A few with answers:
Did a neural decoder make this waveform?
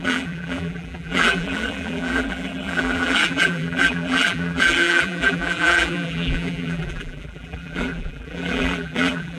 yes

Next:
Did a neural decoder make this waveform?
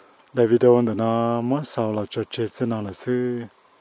no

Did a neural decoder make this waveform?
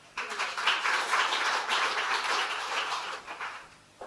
yes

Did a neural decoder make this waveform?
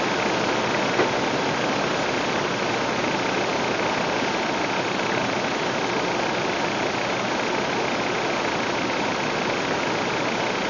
no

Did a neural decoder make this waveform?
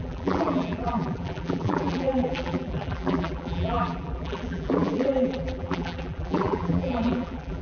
yes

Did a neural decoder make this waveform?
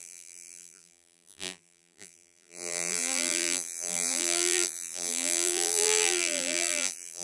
yes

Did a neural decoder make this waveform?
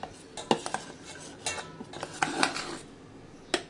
no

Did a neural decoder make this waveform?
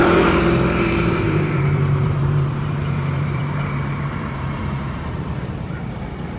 yes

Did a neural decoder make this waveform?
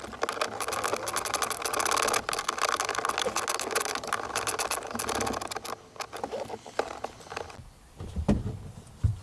no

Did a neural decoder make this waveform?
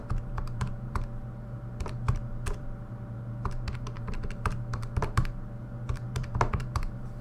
yes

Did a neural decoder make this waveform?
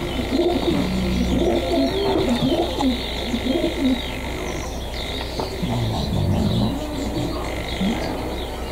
no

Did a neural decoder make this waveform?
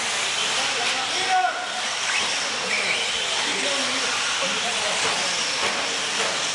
no